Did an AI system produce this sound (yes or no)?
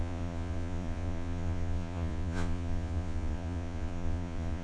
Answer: yes